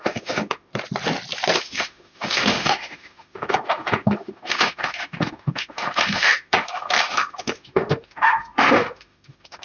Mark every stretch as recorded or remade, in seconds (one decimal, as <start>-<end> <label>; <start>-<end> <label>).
0.0-0.7 remade; 0.7-1.6 recorded; 1.6-9.6 remade